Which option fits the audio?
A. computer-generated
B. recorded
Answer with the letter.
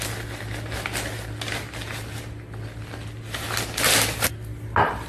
B